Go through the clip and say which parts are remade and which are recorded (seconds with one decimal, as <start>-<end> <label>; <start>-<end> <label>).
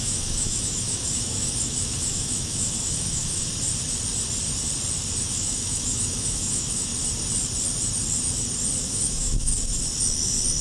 0.0-3.5 remade; 3.5-5.2 recorded; 5.2-6.9 remade; 6.9-8.8 recorded; 8.8-9.5 remade; 9.5-10.6 recorded